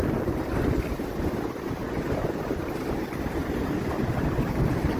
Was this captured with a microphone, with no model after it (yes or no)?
yes